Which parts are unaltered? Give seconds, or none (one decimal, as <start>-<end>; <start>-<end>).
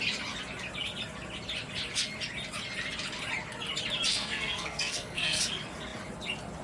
0.0-4.1; 5.4-6.6